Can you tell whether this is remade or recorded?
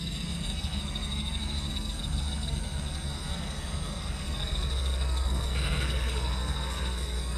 remade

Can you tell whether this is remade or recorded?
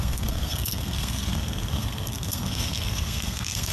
remade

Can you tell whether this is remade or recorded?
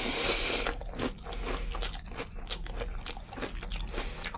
recorded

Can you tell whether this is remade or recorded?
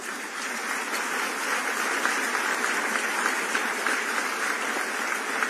recorded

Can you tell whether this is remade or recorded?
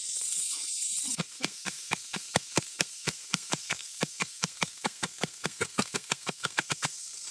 remade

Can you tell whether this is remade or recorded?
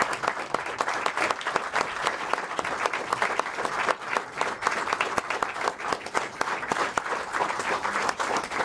recorded